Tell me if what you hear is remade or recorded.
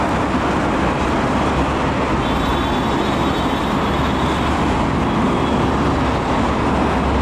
recorded